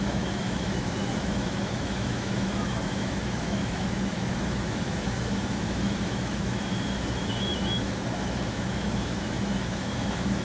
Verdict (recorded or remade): remade